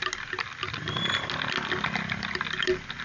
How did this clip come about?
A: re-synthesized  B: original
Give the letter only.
B